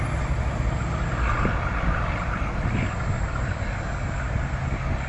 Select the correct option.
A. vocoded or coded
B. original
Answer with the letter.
B